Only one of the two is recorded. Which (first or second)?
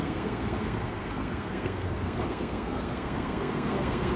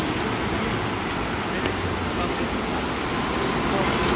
second